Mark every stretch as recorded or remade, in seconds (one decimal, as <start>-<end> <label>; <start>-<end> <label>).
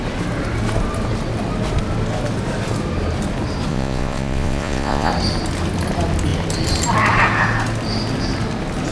0.0-3.7 recorded; 3.7-5.1 remade; 5.1-8.9 recorded